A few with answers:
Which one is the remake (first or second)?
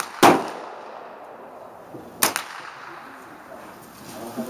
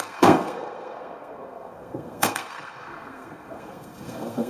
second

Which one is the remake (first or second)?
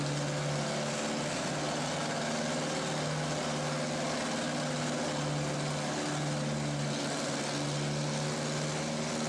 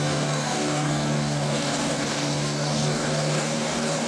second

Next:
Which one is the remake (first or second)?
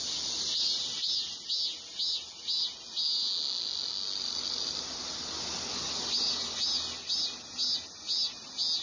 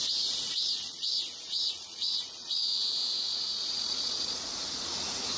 second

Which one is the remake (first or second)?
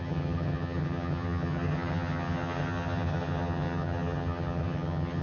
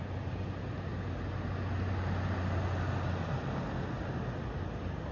first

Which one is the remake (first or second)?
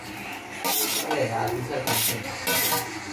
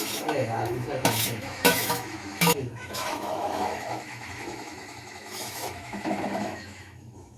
second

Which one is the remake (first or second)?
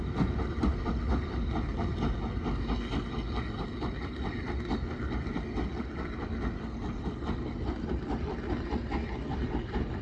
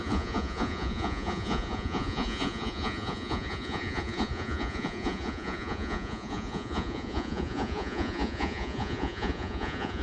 second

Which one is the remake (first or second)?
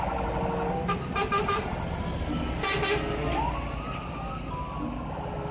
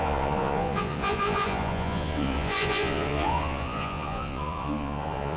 second